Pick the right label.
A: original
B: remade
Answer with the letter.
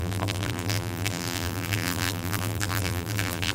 B